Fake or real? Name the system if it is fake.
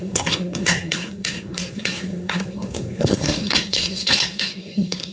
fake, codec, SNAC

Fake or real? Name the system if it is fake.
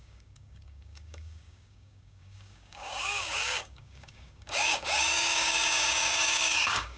fake, codec, DAC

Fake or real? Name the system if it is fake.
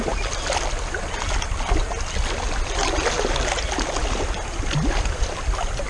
real